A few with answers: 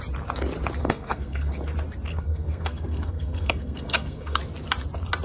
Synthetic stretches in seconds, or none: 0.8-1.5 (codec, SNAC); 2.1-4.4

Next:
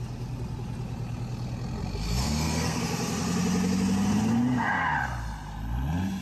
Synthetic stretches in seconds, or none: 2.2-2.8 (codec, SNAC)